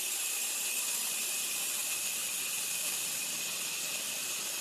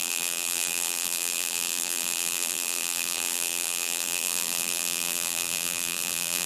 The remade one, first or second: second